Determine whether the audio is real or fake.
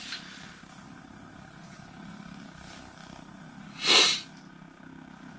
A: real